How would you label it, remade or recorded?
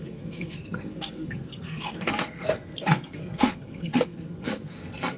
remade